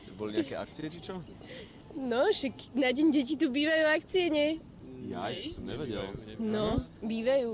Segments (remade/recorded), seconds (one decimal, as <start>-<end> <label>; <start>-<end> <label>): 0.0-7.5 recorded

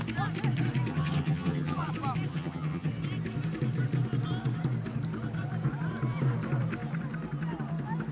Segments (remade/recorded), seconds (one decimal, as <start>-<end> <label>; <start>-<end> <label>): 0.0-0.9 recorded; 0.9-1.9 remade; 1.9-2.3 recorded; 2.3-2.9 remade; 2.9-8.1 recorded

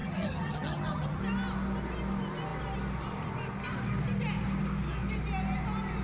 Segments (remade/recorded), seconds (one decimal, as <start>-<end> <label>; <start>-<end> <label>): 0.0-1.2 remade; 1.2-6.0 recorded

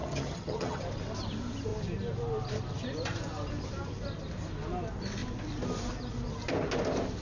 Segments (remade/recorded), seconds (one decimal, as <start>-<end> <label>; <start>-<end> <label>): 0.0-0.8 remade; 0.8-7.2 recorded

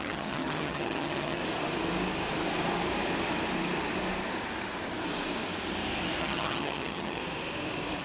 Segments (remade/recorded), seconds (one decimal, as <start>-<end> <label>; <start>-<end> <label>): 0.0-1.4 remade; 1.4-6.2 recorded; 6.2-7.2 remade; 7.2-8.0 recorded

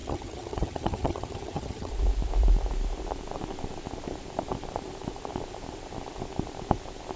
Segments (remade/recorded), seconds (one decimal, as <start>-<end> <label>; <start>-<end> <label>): 0.0-1.9 remade; 1.9-7.2 recorded

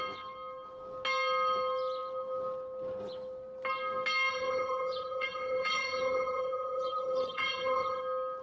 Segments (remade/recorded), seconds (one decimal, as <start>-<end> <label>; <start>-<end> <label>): 0.0-4.3 recorded; 4.3-8.0 remade; 8.0-8.4 recorded